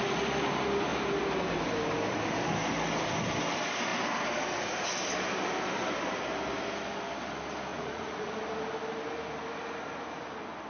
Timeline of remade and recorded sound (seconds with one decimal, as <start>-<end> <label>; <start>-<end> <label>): 0.0-7.7 recorded; 7.7-8.3 remade; 8.3-10.7 recorded